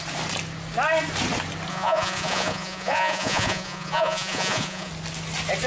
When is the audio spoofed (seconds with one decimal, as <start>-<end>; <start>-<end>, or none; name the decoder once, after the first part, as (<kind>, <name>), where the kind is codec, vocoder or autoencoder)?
1.7-4.9 (vocoder, Vocos)